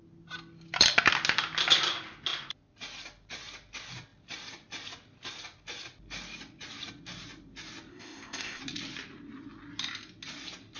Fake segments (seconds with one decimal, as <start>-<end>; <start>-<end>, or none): 7.9-8.6